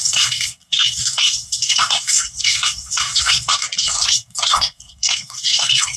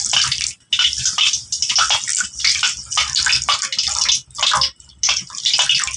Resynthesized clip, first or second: first